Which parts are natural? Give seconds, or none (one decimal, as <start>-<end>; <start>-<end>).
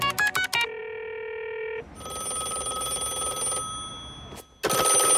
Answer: 0.0-5.2